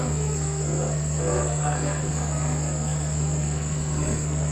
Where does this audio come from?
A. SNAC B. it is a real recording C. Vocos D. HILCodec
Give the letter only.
A